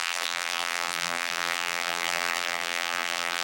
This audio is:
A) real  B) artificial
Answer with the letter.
B